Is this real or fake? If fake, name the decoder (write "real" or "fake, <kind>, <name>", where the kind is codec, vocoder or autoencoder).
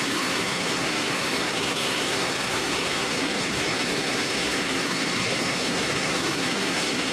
fake, codec, SNAC